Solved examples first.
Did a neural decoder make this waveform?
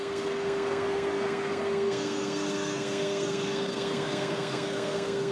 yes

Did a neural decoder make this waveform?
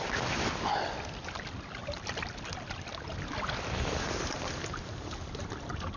no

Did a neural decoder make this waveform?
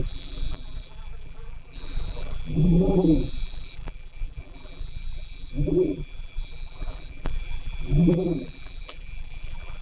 yes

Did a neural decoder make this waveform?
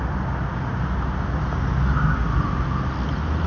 no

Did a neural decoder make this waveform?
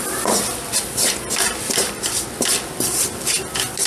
no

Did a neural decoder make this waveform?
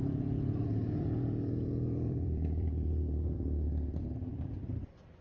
yes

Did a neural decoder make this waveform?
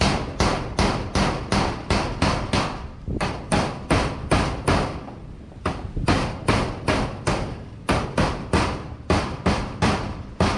yes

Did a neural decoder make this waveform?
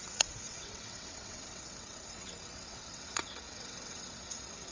yes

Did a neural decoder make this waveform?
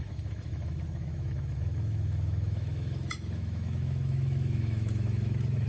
yes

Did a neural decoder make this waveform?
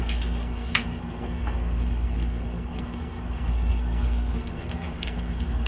yes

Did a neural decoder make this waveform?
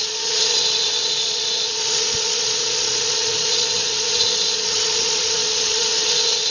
yes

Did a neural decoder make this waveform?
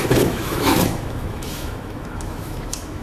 yes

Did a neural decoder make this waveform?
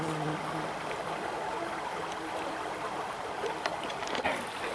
no